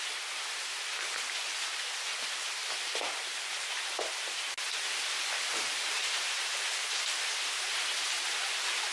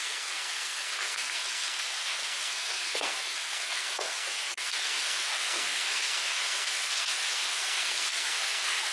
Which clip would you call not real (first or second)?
second